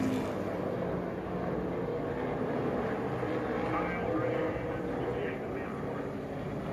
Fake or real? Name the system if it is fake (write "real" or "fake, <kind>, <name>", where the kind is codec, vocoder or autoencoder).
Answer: real